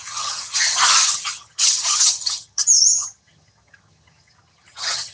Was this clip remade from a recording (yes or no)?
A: yes